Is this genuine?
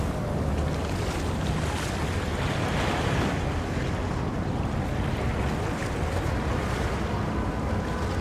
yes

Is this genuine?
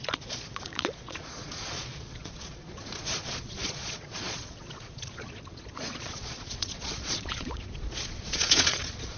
no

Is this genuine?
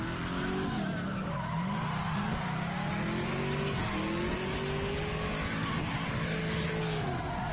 yes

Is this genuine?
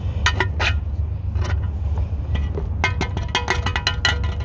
yes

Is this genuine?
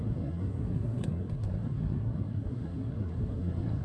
no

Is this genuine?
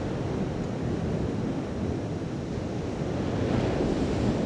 yes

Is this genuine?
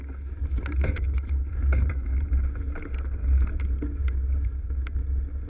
yes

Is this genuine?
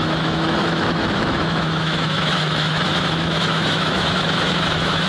no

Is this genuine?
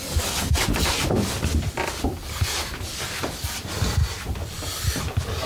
no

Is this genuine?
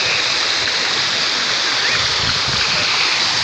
yes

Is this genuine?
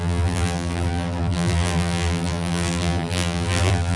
no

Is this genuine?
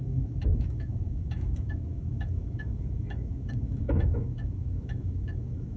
no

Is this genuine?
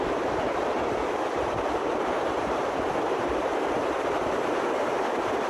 no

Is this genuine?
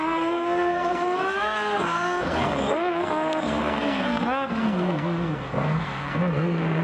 no